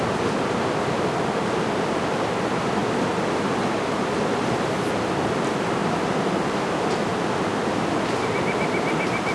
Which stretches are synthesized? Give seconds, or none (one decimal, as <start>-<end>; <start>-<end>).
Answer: 5.8-6.6